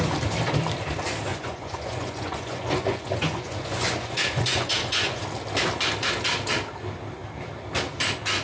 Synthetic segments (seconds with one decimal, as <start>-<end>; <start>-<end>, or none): 1.3-5.2